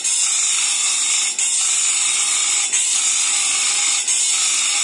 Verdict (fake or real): real